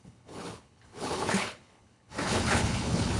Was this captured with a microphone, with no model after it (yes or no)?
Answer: no